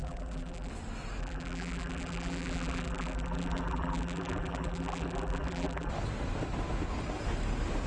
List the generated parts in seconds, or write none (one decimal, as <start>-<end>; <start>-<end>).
0.0-0.7; 1.2-5.9